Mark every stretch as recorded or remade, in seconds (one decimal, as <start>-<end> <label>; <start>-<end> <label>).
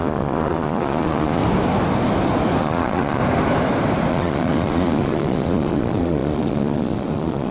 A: 0.0-1.4 remade; 1.4-2.6 recorded; 2.6-3.2 remade; 3.2-4.1 recorded; 4.1-7.5 remade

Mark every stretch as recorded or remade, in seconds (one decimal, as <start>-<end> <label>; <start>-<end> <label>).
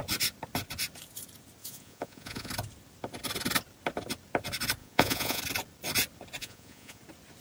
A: 0.0-1.6 recorded; 1.6-2.5 remade; 2.5-4.8 recorded; 4.8-5.4 remade; 5.4-6.4 recorded; 6.4-7.0 remade; 7.0-7.4 recorded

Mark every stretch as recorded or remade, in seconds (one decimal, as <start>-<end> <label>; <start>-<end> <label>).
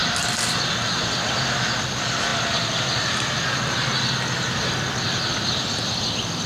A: 0.0-6.5 recorded